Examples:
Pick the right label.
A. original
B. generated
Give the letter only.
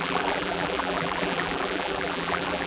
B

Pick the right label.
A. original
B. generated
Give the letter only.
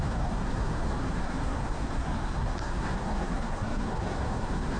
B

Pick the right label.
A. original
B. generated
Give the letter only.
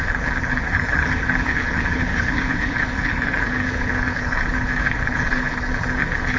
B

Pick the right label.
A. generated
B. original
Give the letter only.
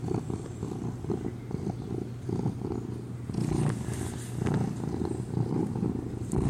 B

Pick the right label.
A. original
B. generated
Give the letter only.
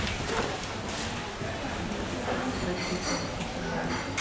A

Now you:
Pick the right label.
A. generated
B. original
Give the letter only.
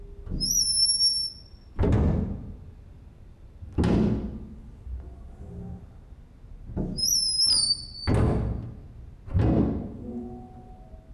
B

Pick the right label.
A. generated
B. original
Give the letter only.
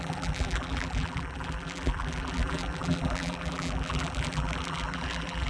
A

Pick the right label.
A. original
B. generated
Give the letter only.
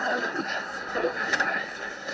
B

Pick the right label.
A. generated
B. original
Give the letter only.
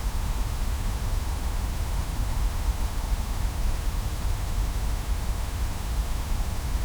A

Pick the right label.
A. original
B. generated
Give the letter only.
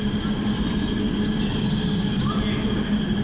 A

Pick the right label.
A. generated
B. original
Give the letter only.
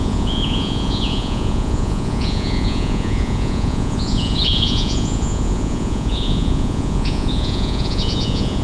A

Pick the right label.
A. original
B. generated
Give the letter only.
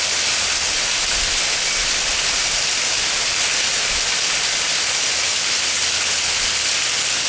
A